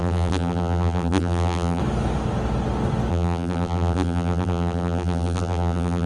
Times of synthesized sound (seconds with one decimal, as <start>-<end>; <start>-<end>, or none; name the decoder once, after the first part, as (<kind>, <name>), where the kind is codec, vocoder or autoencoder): 0.0-1.8 (vocoder, BigVGAN v2); 3.1-6.1